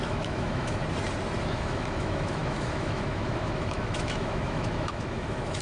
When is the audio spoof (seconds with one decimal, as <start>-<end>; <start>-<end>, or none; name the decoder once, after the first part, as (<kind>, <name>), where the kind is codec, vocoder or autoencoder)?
0.0-0.8 (autoencoder, DAC-VAE); 1.4-5.6